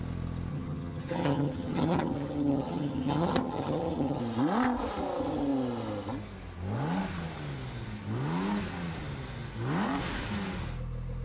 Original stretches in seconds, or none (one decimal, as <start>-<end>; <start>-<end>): 0.0-0.5; 4.2-11.2